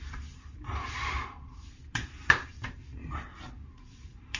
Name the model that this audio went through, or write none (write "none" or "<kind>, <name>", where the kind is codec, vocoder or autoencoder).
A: vocoder, BigVGAN v2